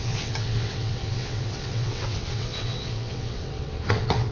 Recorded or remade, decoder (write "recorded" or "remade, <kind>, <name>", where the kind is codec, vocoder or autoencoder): remade, vocoder, WaveNeXt